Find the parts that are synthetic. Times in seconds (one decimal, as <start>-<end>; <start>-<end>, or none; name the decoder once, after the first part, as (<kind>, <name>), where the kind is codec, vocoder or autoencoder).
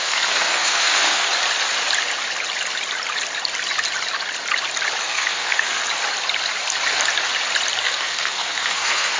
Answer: 0.0-1.3 (codec, SNAC); 5.0-5.8; 7.8-9.2